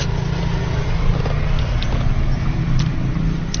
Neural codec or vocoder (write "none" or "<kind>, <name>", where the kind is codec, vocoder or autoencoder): none